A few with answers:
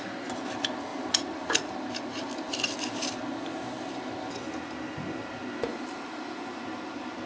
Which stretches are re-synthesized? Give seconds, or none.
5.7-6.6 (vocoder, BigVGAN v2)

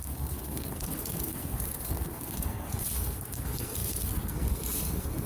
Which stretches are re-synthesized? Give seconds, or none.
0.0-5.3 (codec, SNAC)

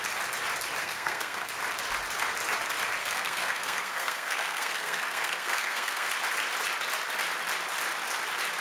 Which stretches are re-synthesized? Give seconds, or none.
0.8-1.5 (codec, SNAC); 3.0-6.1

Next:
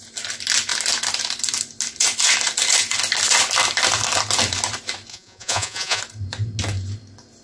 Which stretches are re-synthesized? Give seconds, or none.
5.1-6.0 (vocoder, Vocos)

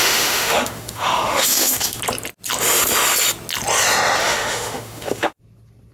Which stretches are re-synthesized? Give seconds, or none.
0.0-2.0 (autoencoder, DAC-VAE); 4.2-5.4

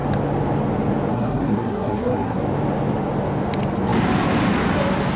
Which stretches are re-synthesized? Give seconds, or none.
1.1-2.4 (codec, SNAC)